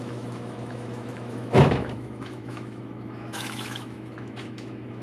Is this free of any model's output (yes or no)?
no